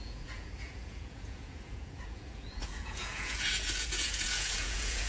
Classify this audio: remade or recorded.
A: remade